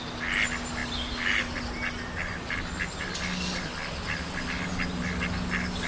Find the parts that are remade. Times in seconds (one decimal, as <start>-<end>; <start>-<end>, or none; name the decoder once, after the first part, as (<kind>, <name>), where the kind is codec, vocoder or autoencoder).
none